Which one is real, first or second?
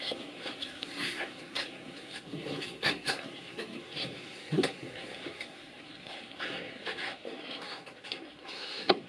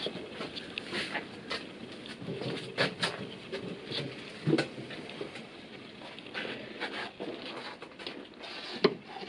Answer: second